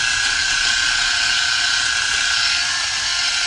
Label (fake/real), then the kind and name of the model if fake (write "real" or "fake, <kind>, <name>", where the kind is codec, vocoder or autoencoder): real